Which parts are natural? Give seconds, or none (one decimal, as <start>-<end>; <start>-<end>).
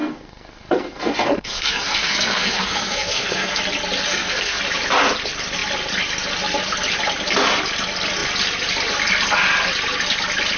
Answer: 3.6-4.1; 4.6-10.6